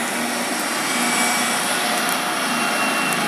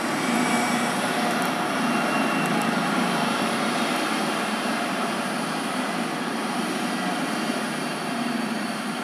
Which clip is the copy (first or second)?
second